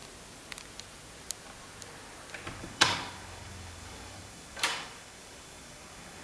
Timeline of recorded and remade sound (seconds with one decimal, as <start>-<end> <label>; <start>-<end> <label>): 0.0-2.6 recorded; 2.6-6.2 remade